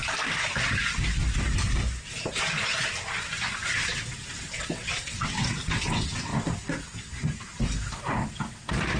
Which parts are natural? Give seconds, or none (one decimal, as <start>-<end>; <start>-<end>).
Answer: 0.0-4.6; 6.3-9.0